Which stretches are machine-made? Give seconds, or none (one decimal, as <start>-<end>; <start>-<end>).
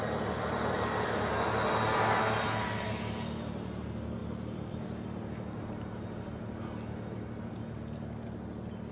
none